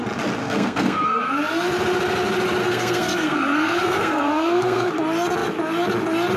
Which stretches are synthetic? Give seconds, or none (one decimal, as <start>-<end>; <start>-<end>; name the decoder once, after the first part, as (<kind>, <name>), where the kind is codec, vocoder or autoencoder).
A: 0.4-1.3 (codec, SNAC); 2.6-4.9